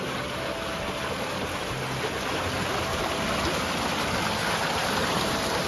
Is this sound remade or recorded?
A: recorded